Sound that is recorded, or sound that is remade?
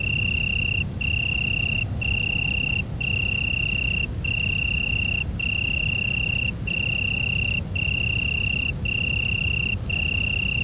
recorded